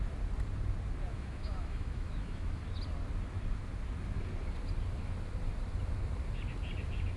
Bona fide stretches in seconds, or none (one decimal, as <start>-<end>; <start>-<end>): 0.0-1.1; 2.6-7.2